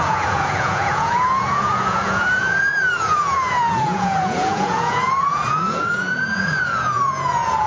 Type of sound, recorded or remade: remade